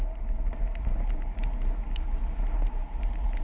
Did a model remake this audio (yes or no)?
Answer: no